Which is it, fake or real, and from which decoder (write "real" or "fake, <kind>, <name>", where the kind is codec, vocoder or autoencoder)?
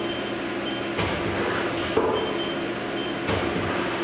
real